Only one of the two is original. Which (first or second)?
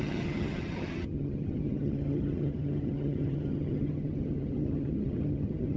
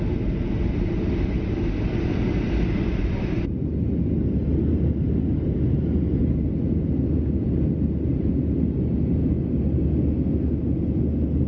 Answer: second